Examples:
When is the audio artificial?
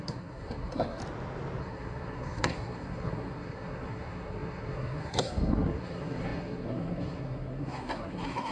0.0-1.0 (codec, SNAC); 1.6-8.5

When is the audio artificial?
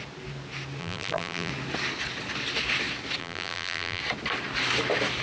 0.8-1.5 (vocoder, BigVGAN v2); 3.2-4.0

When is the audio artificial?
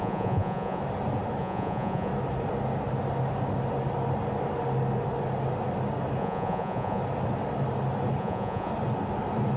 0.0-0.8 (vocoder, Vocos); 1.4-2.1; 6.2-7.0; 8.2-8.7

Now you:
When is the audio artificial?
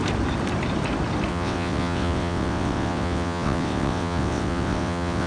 1.3-5.3 (vocoder, WaveNeXt)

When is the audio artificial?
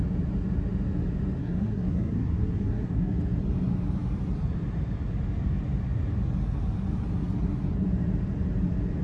1.4-3.2 (codec, SNAC)